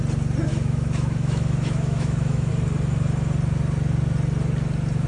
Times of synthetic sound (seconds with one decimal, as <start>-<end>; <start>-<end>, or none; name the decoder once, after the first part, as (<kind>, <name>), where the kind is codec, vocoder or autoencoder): 0.5-2.5 (autoencoder, DAC-VAE)